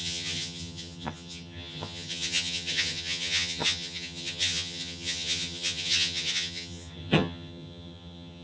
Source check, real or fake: fake